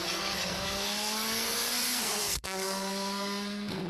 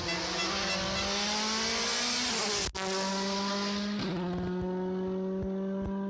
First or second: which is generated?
first